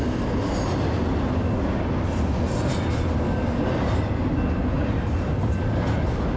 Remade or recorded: recorded